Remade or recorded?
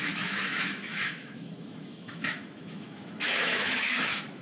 remade